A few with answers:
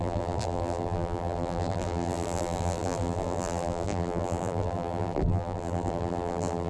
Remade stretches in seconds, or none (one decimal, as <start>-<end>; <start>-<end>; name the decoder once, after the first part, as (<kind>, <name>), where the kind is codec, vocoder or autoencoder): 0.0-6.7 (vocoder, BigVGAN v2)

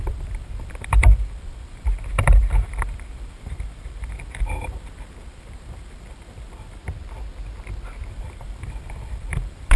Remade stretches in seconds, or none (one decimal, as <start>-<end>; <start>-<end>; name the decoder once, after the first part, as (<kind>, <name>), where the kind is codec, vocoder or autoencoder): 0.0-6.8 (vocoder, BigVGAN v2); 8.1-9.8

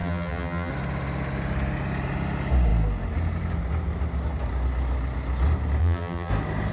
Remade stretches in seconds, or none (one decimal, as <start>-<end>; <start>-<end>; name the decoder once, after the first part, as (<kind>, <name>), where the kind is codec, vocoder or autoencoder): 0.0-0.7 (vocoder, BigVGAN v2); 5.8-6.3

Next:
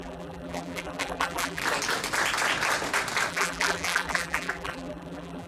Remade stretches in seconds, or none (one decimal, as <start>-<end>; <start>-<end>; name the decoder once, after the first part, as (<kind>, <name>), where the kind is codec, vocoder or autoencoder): 0.0-1.6 (vocoder, BigVGAN v2); 3.3-5.5

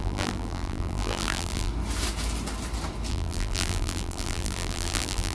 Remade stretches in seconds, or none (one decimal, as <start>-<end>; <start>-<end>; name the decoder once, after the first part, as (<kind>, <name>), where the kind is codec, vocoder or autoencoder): 0.0-1.7 (vocoder, BigVGAN v2); 3.1-5.3